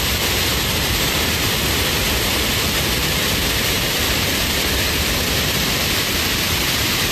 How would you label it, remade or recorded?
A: remade